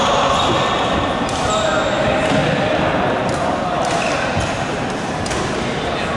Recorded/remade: recorded